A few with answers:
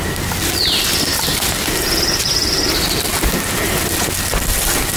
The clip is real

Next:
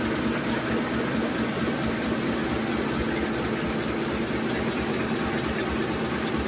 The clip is real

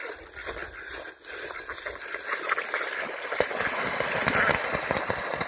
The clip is real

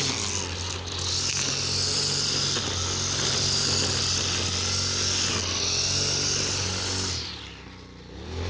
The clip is real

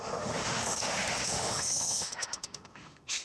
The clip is fake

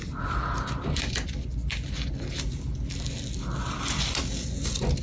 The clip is real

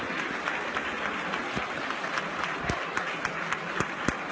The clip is real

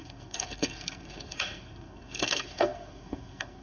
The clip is fake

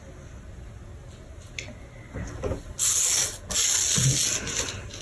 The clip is real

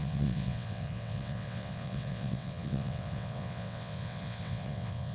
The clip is fake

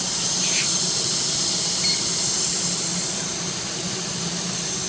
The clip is real